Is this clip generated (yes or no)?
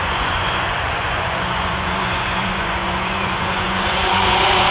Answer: yes